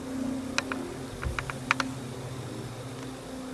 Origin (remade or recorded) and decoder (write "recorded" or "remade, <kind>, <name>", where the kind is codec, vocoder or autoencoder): recorded